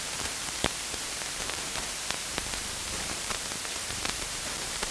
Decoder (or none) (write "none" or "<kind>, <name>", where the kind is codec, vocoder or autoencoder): vocoder, BigVGAN v2